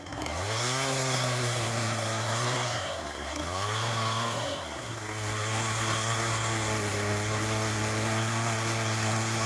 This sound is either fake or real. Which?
fake